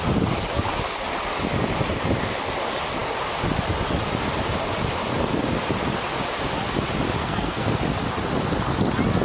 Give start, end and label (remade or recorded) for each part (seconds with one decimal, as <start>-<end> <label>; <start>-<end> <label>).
0.0-7.2 recorded; 7.2-7.8 remade; 7.8-9.2 recorded